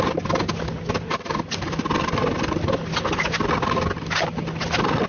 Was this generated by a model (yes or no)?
no